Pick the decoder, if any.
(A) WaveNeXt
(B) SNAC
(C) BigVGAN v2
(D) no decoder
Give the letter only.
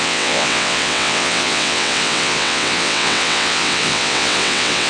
A